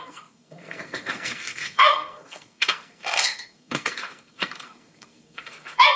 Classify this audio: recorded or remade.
remade